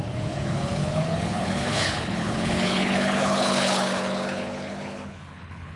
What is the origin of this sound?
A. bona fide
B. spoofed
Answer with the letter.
B